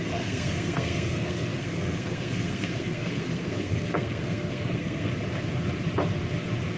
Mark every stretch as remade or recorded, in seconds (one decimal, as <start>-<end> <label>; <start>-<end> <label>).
0.0-5.1 remade; 5.1-6.8 recorded